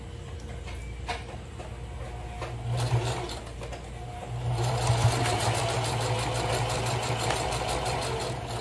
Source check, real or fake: real